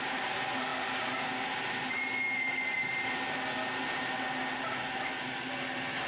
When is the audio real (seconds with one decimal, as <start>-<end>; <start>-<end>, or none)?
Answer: 0.0-6.1